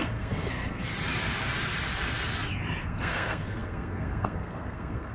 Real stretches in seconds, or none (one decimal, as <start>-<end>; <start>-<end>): 0.9-2.8